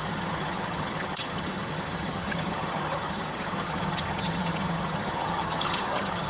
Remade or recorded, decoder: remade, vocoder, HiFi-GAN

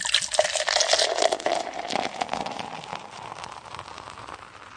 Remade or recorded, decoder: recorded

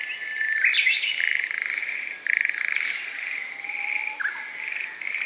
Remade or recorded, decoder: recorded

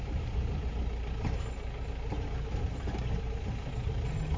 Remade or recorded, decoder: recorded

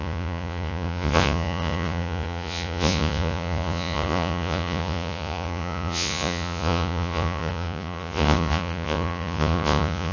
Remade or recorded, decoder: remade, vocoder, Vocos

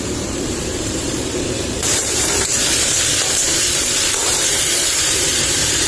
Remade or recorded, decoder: remade, vocoder, BigVGAN v2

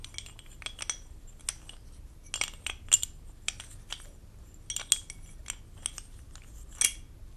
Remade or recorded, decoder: recorded